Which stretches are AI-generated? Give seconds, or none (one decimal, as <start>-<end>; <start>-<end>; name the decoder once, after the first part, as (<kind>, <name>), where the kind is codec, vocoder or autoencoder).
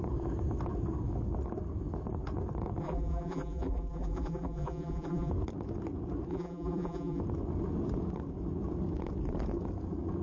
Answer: 2.8-5.3 (vocoder, BigVGAN v2); 6.3-7.2